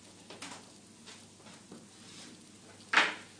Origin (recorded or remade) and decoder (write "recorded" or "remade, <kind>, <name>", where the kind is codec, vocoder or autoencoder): recorded